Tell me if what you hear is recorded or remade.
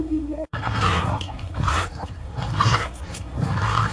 remade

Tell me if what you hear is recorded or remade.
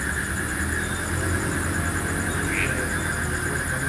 recorded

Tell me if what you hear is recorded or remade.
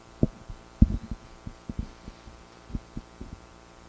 recorded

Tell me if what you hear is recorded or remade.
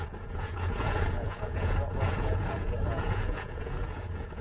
remade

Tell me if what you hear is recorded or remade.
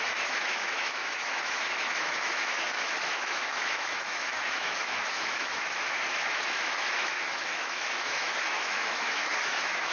remade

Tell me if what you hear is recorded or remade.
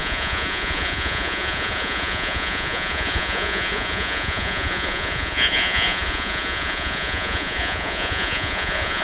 remade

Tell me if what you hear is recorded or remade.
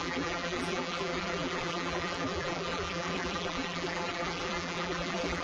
remade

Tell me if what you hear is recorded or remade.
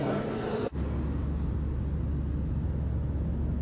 recorded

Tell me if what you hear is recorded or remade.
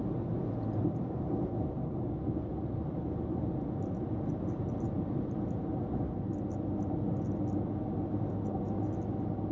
recorded